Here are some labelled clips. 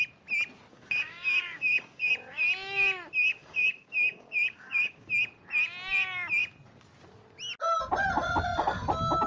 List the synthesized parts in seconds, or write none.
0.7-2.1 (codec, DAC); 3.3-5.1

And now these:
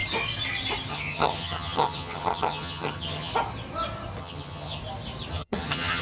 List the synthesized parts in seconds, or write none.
0.9-3.3 (vocoder, HiFi-GAN); 4.2-4.8; 5.3-6.0

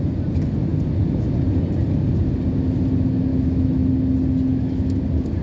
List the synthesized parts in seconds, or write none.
3.3-3.8 (autoencoder, DAC-VAE); 4.5-5.0

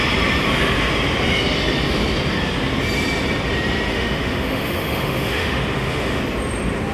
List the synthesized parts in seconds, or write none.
3.9-6.2 (autoencoder, DAC-VAE)

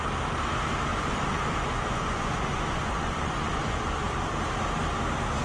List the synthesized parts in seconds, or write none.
0.9-4.1 (vocoder, Vocos)